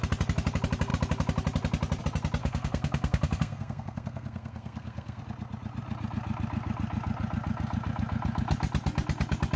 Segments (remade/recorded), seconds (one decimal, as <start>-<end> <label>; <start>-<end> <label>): 0.0-2.4 recorded; 2.4-5.2 remade; 5.2-9.6 recorded